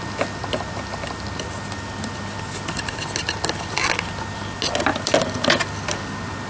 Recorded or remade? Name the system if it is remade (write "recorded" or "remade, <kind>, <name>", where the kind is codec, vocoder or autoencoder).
recorded